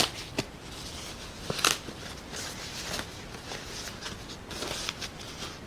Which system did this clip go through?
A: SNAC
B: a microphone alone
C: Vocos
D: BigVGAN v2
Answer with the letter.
B